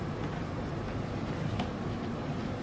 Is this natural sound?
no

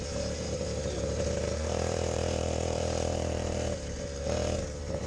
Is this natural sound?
no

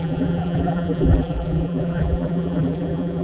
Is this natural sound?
no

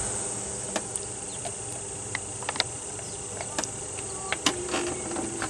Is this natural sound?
yes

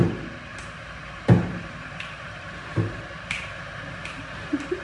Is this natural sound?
no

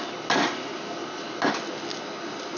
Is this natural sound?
yes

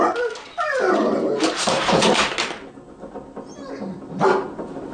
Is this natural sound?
yes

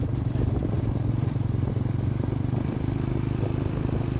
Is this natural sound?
no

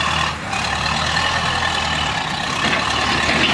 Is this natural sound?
yes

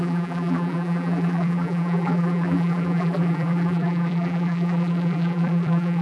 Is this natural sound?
no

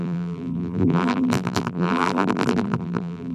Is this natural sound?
no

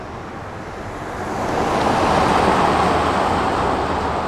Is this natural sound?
yes